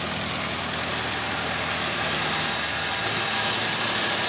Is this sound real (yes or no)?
yes